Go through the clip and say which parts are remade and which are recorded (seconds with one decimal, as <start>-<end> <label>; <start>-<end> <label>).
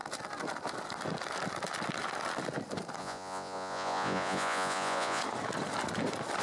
0.0-3.0 recorded; 3.0-5.2 remade; 5.2-6.4 recorded